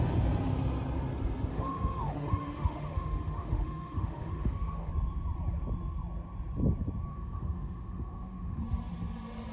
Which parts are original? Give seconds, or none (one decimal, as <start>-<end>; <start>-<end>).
0.0-1.5; 4.9-7.1; 8.6-9.5